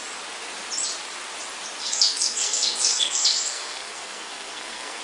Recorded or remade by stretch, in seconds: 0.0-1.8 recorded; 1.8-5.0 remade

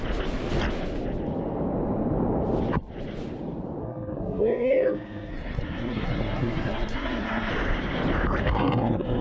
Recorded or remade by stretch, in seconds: 0.0-3.8 recorded; 3.8-7.5 remade; 7.5-8.4 recorded; 8.4-9.2 remade

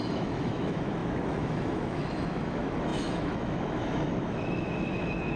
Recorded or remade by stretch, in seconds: 0.0-5.4 remade

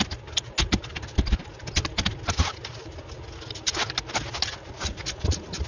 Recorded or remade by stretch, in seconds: 0.0-5.7 recorded

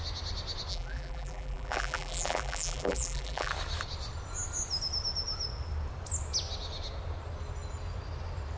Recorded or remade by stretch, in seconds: 0.0-0.7 recorded; 0.7-3.5 remade; 3.5-8.6 recorded

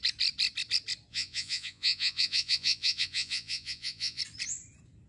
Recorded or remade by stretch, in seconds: 0.0-1.1 recorded; 1.1-4.2 remade; 4.2-5.1 recorded

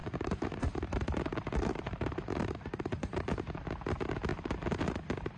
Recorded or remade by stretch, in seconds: 0.0-3.2 remade; 3.2-5.4 recorded

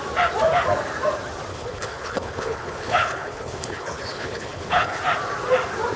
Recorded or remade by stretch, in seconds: 0.0-1.5 recorded; 1.5-5.0 remade; 5.0-6.0 recorded